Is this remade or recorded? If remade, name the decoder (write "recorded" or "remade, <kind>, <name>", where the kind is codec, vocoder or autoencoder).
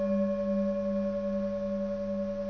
recorded